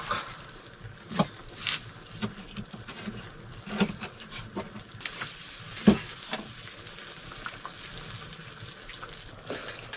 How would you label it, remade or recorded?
recorded